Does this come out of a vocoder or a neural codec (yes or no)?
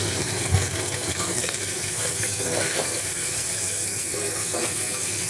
yes